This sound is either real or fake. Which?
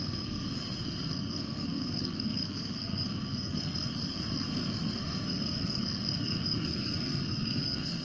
fake